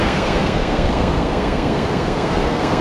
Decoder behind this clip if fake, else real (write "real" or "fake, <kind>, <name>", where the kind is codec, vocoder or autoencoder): fake, codec, SNAC